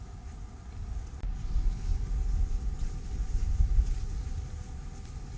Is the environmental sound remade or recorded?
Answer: recorded